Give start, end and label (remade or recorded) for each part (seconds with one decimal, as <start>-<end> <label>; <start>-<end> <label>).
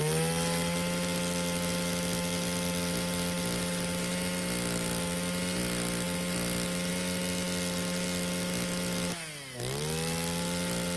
0.0-11.0 recorded